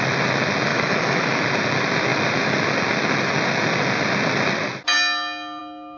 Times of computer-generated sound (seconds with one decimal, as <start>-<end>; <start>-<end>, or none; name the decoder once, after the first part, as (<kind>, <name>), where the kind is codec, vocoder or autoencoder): 0.7-1.4 (autoencoder, DAC-VAE)